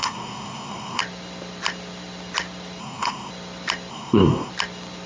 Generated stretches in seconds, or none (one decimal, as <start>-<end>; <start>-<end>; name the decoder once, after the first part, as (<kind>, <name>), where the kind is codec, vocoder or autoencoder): 0.0-1.0 (codec, SNAC); 2.8-3.3; 3.9-4.5